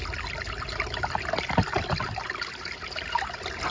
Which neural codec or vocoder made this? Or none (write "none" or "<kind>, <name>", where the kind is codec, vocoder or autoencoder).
none